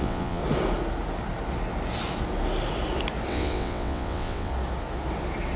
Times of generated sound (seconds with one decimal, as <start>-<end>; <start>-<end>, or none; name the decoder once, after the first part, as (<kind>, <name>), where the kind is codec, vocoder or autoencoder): 0.0-0.4 (vocoder, WaveNeXt); 3.3-4.5